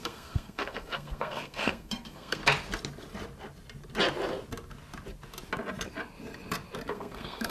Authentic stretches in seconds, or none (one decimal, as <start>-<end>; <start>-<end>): 2.4-6.9